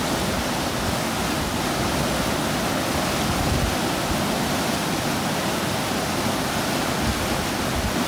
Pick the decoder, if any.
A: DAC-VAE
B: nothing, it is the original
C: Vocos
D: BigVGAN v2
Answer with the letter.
B